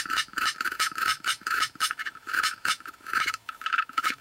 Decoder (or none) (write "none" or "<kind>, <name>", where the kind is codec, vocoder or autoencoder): autoencoder, DAC-VAE